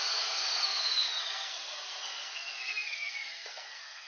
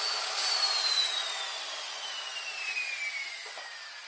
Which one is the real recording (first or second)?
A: second